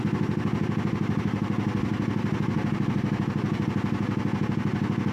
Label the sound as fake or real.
real